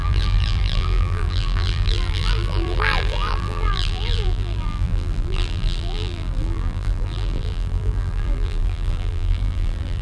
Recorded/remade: remade